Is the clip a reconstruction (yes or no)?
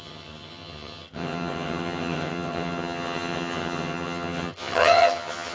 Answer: yes